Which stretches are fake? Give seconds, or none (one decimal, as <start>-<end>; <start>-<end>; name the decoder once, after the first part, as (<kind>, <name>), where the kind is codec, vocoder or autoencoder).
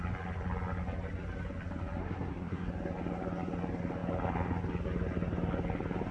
2.0-2.7 (codec, SNAC)